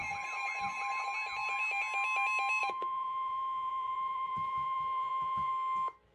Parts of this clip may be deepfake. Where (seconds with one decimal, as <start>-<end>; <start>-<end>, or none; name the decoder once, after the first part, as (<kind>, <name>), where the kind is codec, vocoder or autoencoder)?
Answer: 2.6-5.5 (vocoder, Vocos)